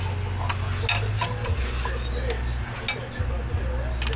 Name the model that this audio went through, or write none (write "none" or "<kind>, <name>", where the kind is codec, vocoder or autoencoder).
none